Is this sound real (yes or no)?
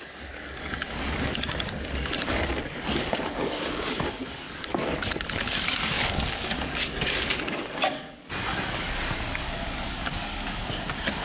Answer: no